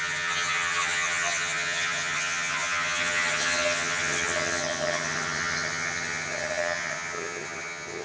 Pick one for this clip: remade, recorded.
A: remade